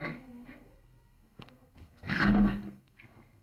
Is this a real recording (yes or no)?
no